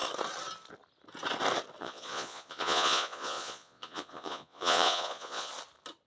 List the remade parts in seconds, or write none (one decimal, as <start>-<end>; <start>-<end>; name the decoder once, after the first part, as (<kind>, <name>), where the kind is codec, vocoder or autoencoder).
1.8-5.5 (vocoder, Vocos)